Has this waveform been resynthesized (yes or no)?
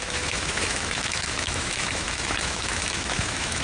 yes